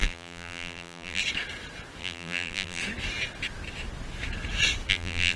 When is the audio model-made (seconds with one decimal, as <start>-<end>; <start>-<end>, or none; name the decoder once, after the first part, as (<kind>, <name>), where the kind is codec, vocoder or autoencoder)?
0.0-1.2 (vocoder, BigVGAN v2); 2.0-2.8; 4.9-5.4